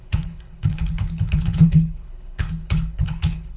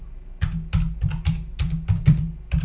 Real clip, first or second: second